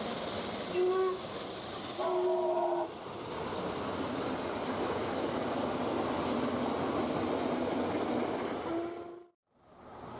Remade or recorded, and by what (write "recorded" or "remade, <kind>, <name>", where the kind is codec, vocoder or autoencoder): recorded